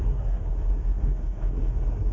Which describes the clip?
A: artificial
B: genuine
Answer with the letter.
A